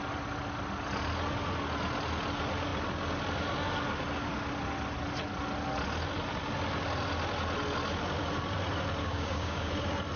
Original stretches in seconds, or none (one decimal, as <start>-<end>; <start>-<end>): 0.0-9.0; 9.7-10.2